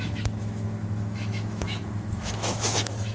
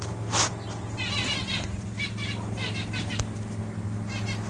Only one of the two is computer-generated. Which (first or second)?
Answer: first